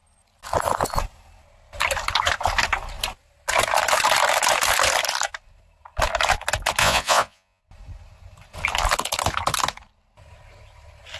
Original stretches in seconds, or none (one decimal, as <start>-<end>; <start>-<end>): 0.0-6.8; 7.6-11.2